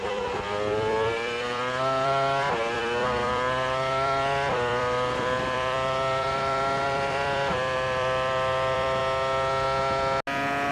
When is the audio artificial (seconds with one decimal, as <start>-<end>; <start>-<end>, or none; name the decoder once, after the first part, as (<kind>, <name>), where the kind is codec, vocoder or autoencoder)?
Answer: 0.0-9.0 (vocoder, BigVGAN v2)